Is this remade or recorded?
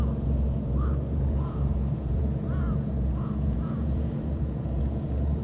remade